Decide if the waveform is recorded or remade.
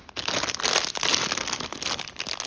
recorded